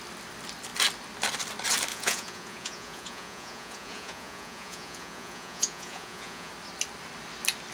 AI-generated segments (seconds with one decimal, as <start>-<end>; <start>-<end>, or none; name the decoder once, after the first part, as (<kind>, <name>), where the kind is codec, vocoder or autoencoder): 1.9-6.5 (vocoder, Vocos)